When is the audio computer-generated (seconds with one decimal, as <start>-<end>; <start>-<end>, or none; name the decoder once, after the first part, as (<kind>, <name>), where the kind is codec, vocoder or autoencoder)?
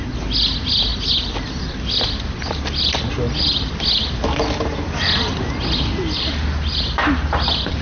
none